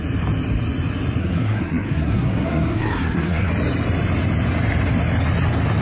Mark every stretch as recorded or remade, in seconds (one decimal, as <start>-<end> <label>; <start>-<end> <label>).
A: 0.0-1.2 recorded; 1.2-3.5 remade; 3.5-5.8 recorded